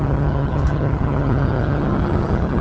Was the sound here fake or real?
fake